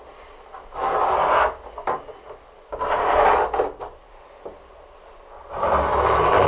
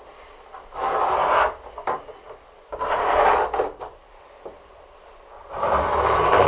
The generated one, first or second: second